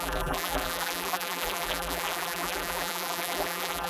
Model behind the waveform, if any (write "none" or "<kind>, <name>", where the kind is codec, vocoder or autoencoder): vocoder, BigVGAN v2